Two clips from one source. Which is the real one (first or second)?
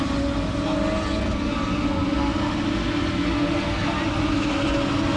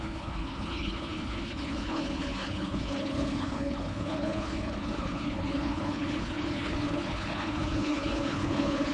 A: first